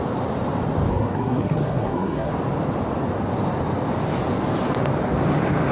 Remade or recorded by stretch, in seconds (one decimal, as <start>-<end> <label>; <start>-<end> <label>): 0.0-0.9 recorded; 0.9-2.3 remade; 2.3-5.7 recorded